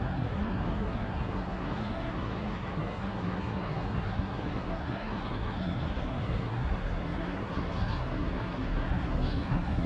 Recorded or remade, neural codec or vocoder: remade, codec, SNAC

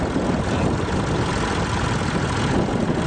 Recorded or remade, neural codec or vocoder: recorded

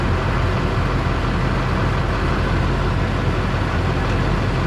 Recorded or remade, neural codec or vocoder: recorded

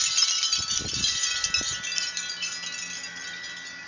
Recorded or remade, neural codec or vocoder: recorded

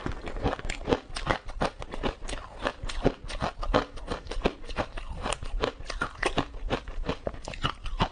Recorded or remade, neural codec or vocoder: recorded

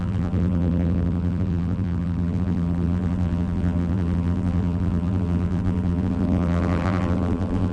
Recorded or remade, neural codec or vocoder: remade, vocoder, BigVGAN v2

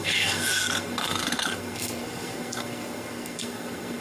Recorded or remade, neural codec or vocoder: remade, codec, SNAC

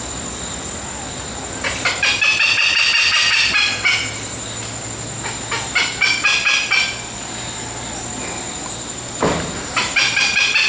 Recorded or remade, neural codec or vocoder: recorded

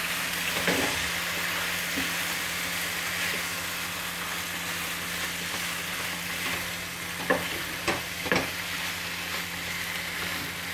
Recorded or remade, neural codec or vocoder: recorded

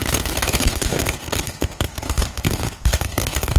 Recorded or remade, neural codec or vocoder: remade, codec, SNAC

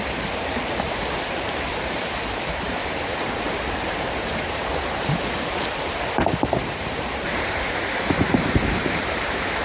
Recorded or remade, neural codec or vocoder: remade, vocoder, BigVGAN v2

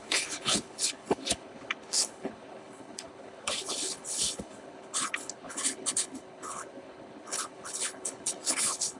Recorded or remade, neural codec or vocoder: remade, codec, HILCodec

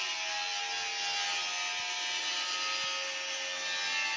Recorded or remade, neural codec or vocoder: recorded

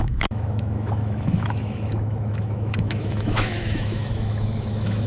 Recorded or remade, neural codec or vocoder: remade, autoencoder, DAC-VAE